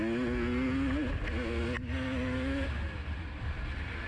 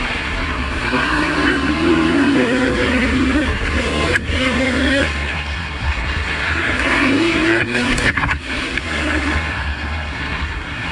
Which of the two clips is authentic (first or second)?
first